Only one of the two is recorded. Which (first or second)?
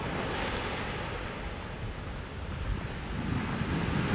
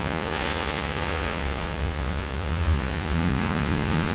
first